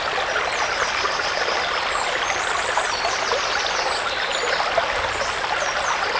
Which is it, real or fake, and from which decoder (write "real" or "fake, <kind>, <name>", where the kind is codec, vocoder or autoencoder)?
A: real